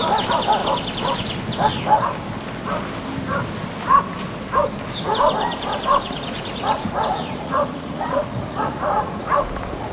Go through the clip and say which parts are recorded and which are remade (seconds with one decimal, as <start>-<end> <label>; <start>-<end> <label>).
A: 0.0-5.9 recorded; 5.9-9.9 remade